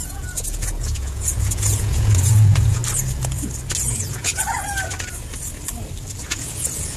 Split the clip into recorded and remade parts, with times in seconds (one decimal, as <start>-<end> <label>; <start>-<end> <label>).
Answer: 0.0-2.8 remade; 2.8-3.8 recorded; 3.8-4.3 remade; 4.3-6.3 recorded; 6.3-7.0 remade